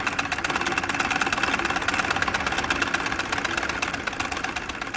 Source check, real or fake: real